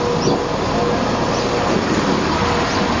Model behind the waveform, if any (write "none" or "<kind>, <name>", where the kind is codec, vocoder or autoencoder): none